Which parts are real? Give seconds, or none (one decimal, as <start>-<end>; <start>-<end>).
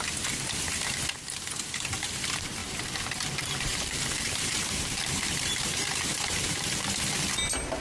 0.0-2.6; 7.0-7.8